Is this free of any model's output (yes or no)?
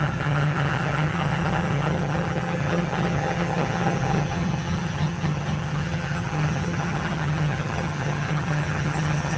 no